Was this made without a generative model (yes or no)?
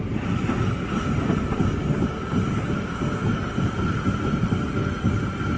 no